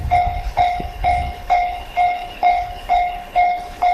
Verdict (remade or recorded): remade